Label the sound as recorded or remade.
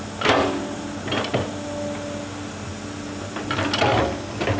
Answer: recorded